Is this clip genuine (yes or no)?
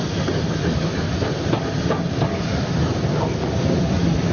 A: yes